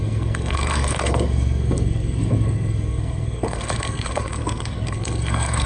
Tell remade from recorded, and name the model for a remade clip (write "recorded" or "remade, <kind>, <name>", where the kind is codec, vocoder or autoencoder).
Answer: remade, codec, SNAC